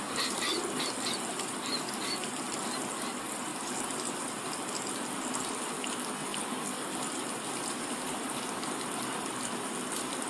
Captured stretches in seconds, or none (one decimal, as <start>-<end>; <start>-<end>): 0.0-10.3